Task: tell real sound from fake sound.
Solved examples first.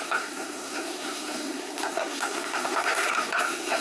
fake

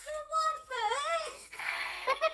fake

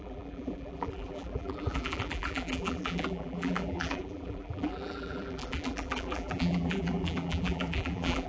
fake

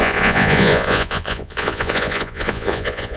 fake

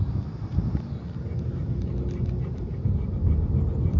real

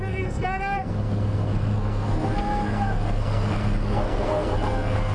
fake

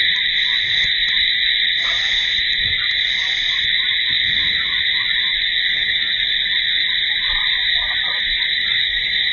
real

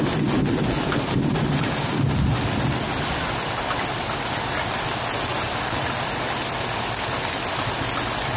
real